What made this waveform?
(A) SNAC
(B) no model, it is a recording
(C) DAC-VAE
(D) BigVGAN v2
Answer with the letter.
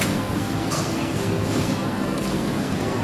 A